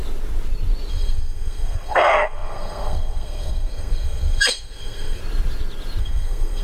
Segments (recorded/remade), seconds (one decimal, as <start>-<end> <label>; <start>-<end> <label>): 0.0-0.9 recorded; 0.9-5.2 remade; 5.2-6.0 recorded; 6.0-6.6 remade